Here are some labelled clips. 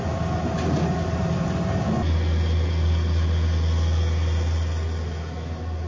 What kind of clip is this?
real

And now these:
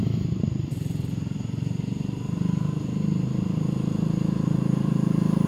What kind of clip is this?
real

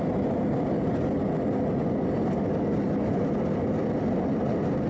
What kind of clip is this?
real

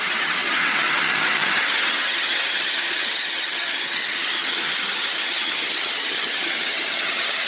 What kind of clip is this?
fake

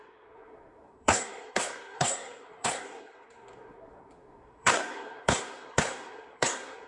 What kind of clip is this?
fake